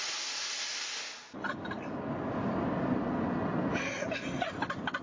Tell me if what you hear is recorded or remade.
recorded